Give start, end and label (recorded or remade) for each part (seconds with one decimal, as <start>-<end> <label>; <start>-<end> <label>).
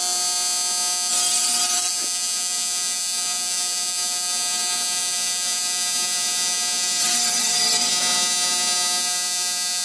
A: 0.0-1.1 recorded; 1.1-1.9 remade; 1.9-7.0 recorded; 7.0-7.9 remade; 7.9-9.8 recorded